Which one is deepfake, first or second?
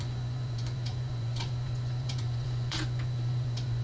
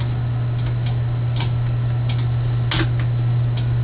first